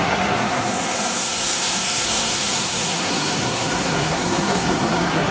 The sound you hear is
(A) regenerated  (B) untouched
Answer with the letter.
A